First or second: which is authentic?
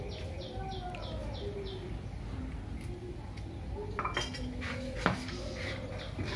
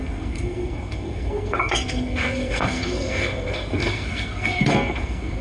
first